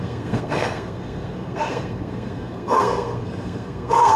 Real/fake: fake